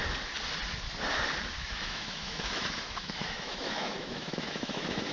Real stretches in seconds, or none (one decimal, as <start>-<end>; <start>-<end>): 0.0-1.6